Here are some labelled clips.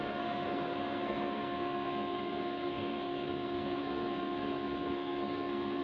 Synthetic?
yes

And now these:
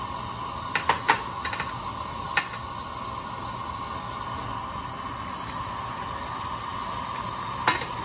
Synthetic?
no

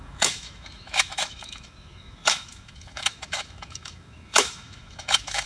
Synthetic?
yes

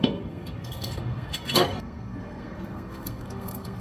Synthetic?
yes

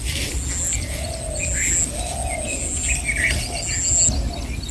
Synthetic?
no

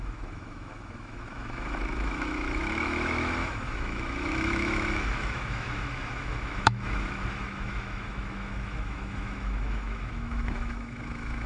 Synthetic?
yes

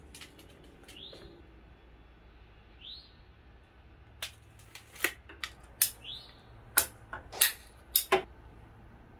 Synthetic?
no